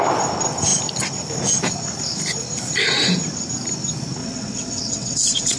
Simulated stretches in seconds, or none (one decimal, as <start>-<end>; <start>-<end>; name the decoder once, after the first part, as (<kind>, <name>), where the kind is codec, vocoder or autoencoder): 4.2-5.6 (vocoder, WaveNeXt)